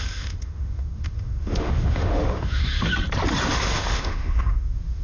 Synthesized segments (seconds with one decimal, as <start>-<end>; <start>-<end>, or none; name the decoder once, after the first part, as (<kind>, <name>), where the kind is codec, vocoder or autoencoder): 0.0-2.9 (autoencoder, DAC-VAE); 3.4-5.0